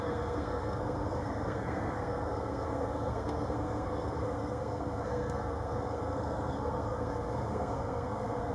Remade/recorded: remade